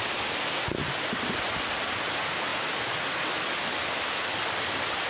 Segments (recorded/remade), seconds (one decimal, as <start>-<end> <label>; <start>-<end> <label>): 0.0-5.1 recorded